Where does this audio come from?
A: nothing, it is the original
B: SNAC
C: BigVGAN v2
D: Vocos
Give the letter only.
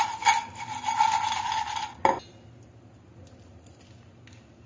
A